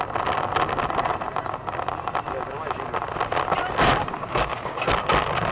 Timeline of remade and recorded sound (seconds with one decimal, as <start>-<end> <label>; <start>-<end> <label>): 0.0-4.0 recorded; 4.0-4.9 remade; 4.9-5.5 recorded